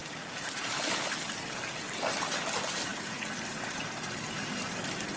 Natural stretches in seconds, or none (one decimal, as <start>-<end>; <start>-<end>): 1.2-5.2